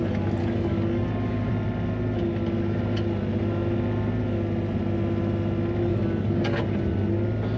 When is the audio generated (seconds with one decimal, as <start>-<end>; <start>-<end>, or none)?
0.4-1.5; 5.9-6.6